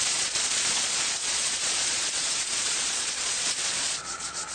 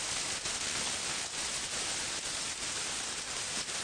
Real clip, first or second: second